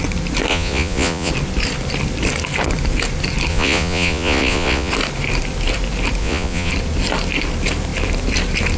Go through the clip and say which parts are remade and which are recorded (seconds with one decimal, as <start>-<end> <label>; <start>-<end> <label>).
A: 0.0-0.5 recorded; 0.5-1.3 remade; 1.3-3.5 recorded; 3.5-4.9 remade; 4.9-6.2 recorded; 6.2-6.7 remade; 6.7-8.8 recorded